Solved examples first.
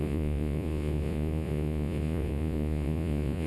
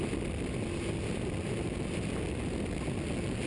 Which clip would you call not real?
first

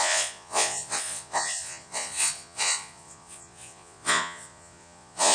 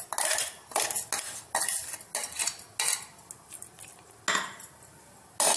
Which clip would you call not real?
first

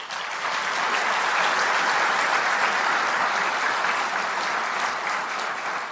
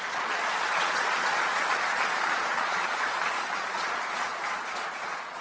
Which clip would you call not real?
second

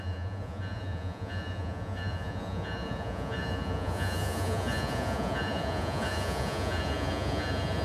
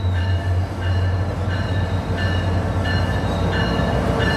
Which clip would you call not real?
first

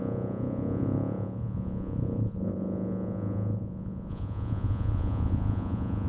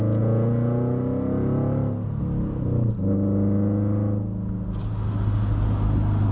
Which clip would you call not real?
first